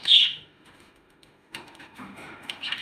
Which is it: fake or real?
fake